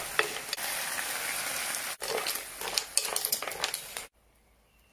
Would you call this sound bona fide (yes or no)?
yes